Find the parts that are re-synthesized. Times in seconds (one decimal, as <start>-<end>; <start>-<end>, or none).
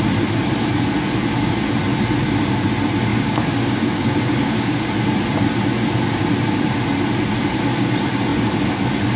3.1-4.8